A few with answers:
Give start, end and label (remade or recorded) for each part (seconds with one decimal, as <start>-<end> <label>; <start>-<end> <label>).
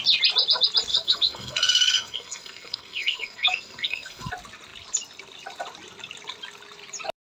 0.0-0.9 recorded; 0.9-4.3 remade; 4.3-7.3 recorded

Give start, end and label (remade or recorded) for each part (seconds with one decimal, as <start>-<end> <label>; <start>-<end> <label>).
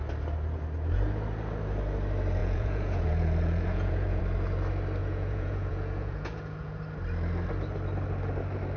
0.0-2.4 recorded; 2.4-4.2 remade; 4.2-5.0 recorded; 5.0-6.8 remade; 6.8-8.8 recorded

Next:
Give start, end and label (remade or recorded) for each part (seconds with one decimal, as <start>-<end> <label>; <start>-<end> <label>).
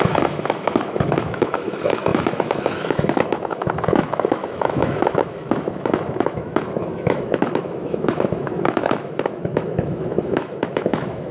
0.0-11.3 remade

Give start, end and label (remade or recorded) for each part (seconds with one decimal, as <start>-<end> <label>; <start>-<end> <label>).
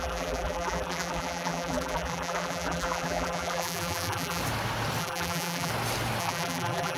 0.0-4.4 remade; 4.4-5.0 recorded; 5.0-5.7 remade; 5.7-6.2 recorded; 6.2-7.0 remade